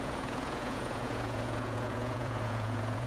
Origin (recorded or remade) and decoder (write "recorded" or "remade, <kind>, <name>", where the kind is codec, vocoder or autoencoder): remade, vocoder, Vocos